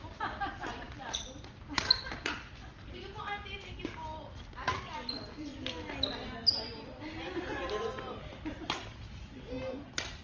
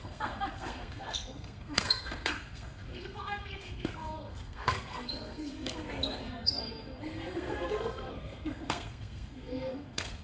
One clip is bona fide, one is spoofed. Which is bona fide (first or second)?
first